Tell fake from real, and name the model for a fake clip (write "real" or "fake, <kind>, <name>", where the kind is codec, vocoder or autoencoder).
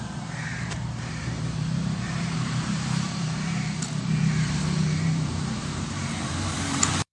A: fake, vocoder, BigVGAN v2